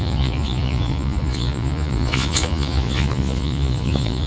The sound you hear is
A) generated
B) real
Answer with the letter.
A